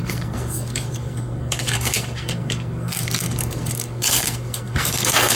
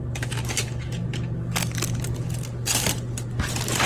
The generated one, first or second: first